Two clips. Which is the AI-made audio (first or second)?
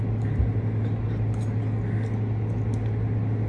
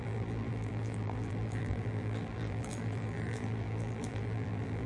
second